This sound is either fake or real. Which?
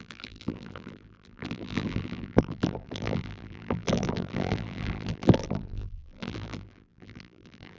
fake